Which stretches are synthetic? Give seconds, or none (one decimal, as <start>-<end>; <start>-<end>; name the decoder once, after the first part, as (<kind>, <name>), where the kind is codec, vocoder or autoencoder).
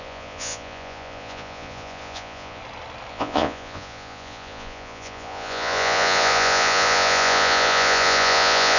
0.0-2.6 (vocoder, Vocos); 3.1-8.8